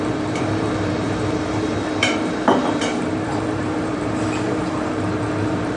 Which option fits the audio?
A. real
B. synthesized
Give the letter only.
B